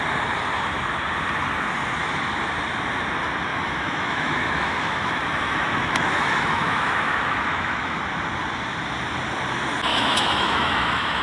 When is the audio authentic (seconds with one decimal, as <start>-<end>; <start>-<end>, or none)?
0.0-3.5; 8.0-9.9